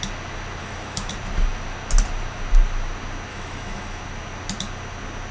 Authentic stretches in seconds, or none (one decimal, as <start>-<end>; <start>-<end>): 0.0-0.6; 1.1-3.3; 4.0-5.3